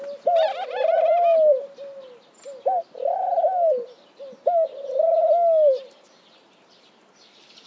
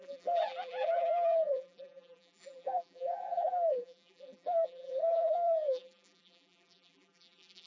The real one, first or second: first